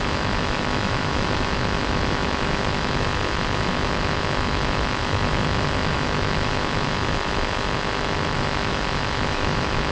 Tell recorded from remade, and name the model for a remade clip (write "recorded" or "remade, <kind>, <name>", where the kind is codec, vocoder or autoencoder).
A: remade, autoencoder, DAC-VAE